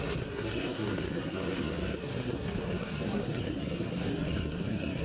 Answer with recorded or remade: remade